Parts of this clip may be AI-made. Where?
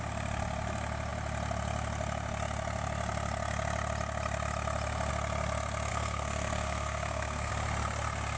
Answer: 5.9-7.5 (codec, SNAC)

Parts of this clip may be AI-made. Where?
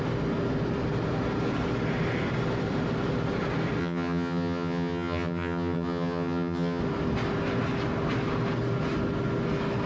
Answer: 3.8-6.8 (vocoder, HiFi-GAN)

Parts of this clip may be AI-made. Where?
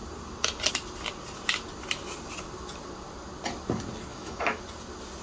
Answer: 4.1-4.6 (autoencoder, DAC-VAE)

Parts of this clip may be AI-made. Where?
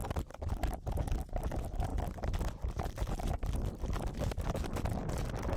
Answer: none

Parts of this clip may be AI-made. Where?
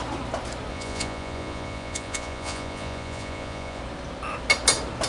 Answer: 0.7-3.8 (vocoder, Vocos)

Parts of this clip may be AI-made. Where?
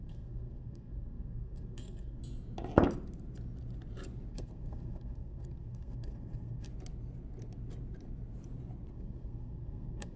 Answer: 0.0-2.2 (codec, SNAC); 4.3-6.7; 8.9-10.2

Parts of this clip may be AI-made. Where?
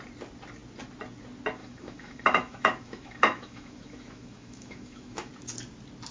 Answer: 1.6-5.3 (autoencoder, DAC-VAE)